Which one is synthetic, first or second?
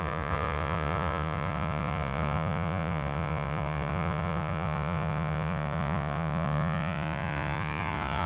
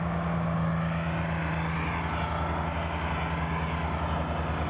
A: first